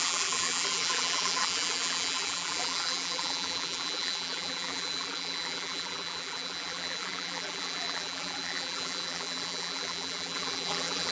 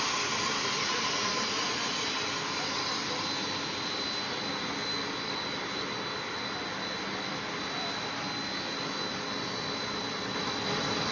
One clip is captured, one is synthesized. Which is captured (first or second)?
second